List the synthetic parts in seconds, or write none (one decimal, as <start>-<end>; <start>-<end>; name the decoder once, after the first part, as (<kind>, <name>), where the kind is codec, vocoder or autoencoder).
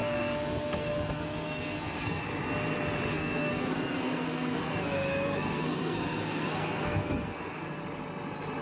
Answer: 0.0-2.2 (codec, SNAC); 3.1-7.8